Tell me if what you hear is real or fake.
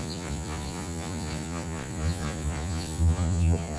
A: fake